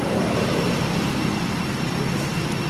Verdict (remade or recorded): recorded